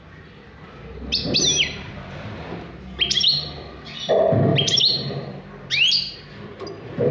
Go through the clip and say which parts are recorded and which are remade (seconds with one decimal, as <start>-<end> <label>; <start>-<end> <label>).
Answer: 0.0-7.1 recorded